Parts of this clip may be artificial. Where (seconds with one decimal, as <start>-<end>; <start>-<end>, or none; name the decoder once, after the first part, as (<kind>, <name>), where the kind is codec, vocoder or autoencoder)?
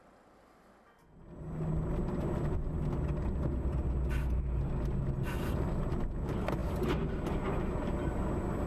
none